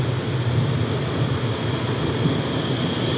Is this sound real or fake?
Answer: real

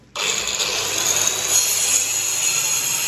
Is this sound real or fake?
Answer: real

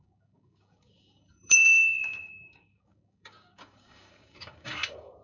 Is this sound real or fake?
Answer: fake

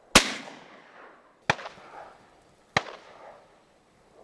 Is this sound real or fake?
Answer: real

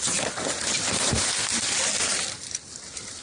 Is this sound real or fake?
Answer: real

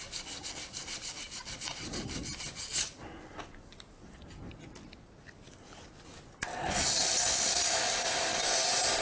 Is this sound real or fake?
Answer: real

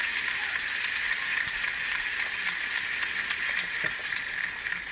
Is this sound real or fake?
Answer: real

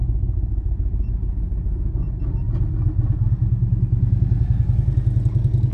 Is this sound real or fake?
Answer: real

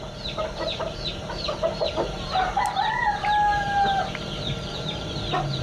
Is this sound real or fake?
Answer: fake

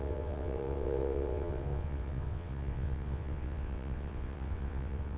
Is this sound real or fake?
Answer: fake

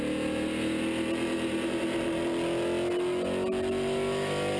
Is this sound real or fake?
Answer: real